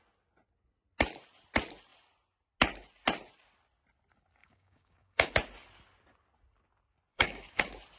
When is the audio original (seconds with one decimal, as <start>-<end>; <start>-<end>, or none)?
0.0-4.4; 5.3-7.1; 7.6-8.0